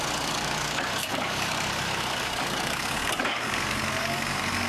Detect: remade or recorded remade